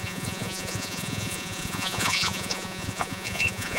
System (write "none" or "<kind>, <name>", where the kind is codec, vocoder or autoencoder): vocoder, Vocos